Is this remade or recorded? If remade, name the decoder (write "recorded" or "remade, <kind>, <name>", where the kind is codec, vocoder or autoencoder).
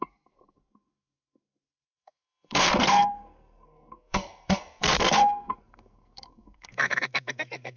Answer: remade, codec, SNAC